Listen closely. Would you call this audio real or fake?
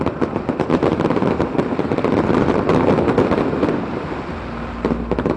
real